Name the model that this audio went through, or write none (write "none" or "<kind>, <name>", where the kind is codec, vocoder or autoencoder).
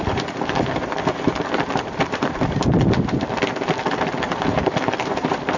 vocoder, BigVGAN v2